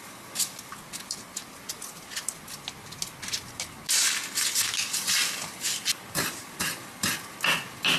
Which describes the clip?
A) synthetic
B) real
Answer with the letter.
B